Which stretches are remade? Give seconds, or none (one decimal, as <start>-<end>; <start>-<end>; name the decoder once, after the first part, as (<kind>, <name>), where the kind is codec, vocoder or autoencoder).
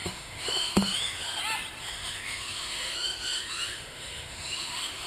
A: 0.0-1.4 (autoencoder, DAC-VAE); 1.8-5.1